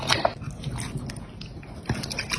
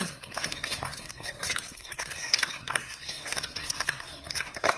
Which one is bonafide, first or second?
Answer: first